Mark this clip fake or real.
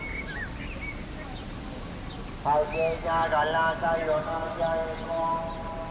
real